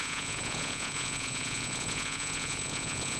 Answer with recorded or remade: remade